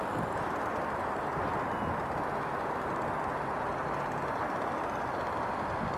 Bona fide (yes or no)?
yes